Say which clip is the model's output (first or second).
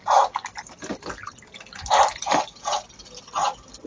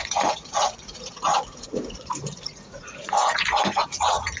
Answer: second